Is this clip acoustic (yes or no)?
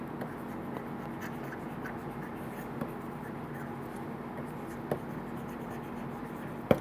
yes